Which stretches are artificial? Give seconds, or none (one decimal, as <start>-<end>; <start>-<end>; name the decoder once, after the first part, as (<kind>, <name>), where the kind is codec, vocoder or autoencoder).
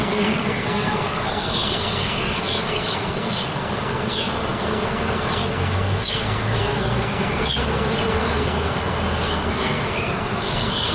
0.0-10.9 (codec, SNAC)